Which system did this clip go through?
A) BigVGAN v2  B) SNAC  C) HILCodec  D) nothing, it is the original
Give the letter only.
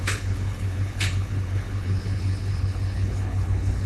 C